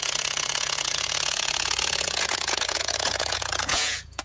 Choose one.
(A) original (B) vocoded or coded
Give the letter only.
B